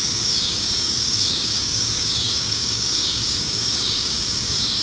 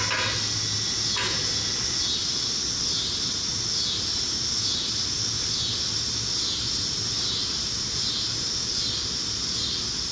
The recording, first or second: second